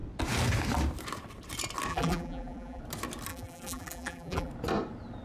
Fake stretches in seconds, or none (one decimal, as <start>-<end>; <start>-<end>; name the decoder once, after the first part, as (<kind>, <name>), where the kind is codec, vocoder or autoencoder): 1.9-2.8 (vocoder, BigVGAN v2); 3.3-4.5